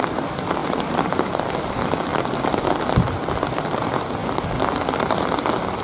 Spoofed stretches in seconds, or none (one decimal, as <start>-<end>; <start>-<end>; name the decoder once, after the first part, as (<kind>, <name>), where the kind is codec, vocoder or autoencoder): 0.0-0.6 (vocoder, BigVGAN v2); 1.7-2.1; 3.7-4.2; 5.2-5.8